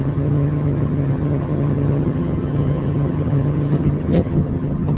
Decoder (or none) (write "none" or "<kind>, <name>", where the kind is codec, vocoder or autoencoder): vocoder, HiFi-GAN